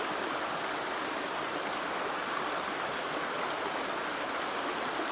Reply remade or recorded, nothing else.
recorded